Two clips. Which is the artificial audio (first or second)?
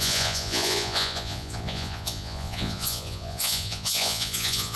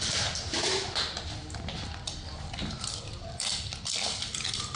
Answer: first